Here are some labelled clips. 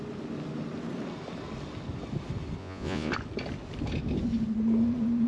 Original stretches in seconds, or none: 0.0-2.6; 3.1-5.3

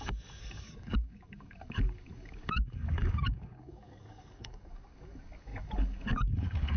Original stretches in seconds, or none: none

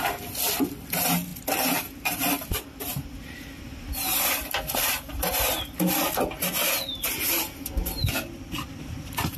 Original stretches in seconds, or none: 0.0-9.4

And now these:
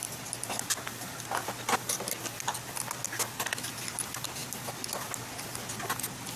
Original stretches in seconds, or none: 0.0-6.4

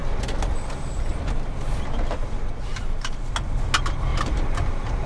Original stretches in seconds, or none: 0.0-2.7; 3.3-4.1

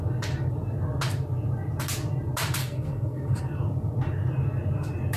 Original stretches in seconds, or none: 0.0-2.6; 3.4-5.2